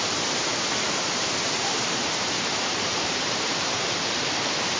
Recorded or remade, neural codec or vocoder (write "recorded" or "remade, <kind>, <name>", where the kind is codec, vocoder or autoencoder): remade, vocoder, BigVGAN v2